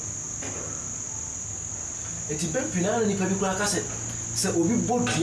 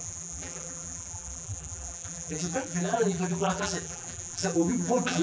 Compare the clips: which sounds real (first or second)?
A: first